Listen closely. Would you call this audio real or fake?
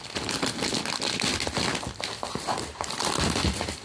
real